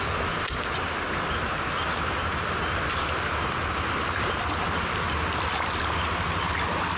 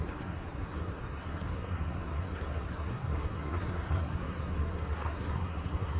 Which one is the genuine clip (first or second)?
first